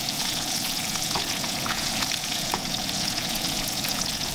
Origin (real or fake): fake